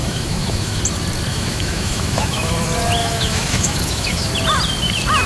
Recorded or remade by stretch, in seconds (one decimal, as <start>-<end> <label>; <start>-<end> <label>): 0.0-0.8 remade; 0.8-1.3 recorded; 1.3-2.5 remade; 2.5-3.0 recorded; 3.0-4.3 remade; 4.3-5.3 recorded